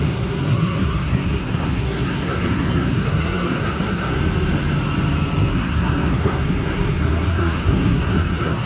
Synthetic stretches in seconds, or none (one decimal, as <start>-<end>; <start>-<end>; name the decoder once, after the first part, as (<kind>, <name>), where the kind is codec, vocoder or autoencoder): 0.0-4.2 (codec, SNAC); 5.5-8.7